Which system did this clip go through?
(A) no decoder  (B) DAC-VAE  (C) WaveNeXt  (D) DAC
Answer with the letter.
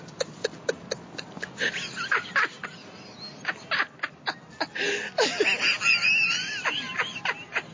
A